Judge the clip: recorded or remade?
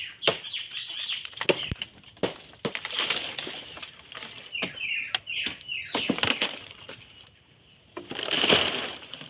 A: recorded